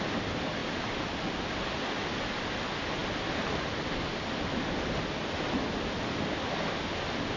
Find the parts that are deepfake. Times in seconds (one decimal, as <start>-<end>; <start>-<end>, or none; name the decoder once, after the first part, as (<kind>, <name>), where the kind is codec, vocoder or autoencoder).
none